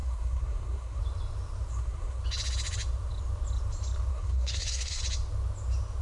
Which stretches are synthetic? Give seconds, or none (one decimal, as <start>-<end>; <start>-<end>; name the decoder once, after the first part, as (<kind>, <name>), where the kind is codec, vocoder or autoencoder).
0.0-1.0 (codec, SNAC); 1.7-2.2; 4.1-5.0